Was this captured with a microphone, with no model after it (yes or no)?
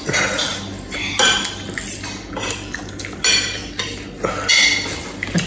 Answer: yes